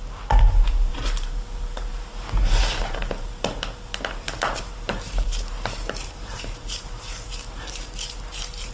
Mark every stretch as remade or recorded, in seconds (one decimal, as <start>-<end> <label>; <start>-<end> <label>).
0.0-0.9 remade; 0.9-2.6 recorded; 2.6-3.0 remade; 3.0-4.6 recorded; 4.6-8.7 remade